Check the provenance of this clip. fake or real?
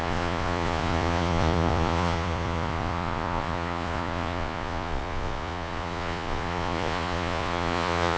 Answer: fake